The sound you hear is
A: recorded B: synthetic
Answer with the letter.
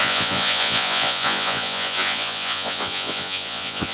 B